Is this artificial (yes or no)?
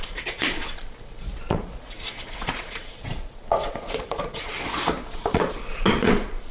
yes